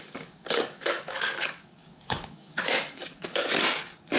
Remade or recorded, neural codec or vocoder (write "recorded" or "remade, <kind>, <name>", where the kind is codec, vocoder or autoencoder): remade, codec, DAC